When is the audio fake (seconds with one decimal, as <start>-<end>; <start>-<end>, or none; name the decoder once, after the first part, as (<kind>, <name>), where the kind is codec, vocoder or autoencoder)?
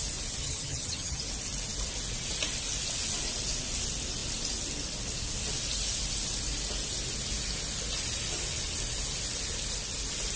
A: 0.4-1.2 (vocoder, HiFi-GAN)